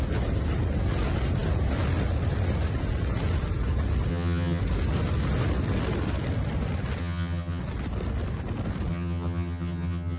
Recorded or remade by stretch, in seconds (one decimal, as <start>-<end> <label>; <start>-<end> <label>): 0.0-4.1 recorded; 4.1-4.6 remade; 4.6-7.0 recorded; 7.0-7.6 remade; 7.6-8.9 recorded; 8.9-10.2 remade